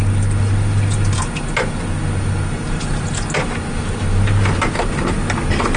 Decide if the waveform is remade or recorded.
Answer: recorded